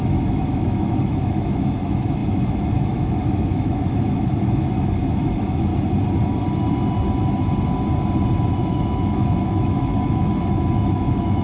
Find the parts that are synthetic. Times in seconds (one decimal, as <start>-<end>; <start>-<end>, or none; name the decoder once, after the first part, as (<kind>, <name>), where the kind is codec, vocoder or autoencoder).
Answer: 0.0-5.7 (autoencoder, DAC-VAE); 8.6-11.4